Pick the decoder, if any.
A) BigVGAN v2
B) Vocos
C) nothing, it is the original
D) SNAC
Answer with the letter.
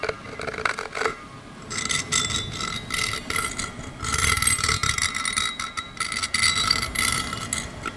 C